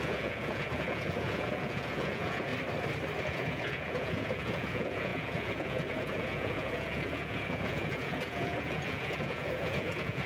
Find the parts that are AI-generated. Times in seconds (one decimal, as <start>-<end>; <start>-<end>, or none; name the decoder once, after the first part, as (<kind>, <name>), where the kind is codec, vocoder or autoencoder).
0.0-2.5 (vocoder, Vocos); 3.2-10.3